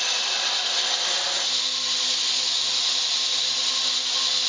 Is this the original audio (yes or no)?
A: yes